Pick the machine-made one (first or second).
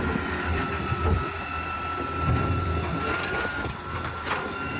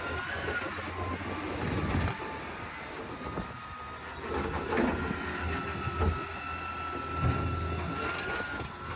first